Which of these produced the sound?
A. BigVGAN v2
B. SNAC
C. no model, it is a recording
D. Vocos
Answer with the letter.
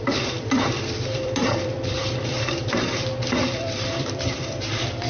A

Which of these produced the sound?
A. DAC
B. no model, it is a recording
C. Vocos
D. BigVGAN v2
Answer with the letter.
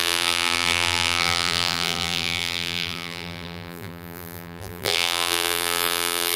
D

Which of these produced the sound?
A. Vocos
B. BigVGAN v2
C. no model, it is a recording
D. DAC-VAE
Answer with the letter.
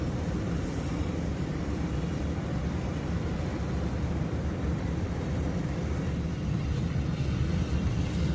B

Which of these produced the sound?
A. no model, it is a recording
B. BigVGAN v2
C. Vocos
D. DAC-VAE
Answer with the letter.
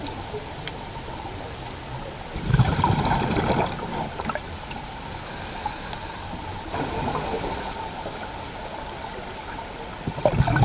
B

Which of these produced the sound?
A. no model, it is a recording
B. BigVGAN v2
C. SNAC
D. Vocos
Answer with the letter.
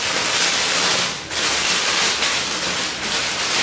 A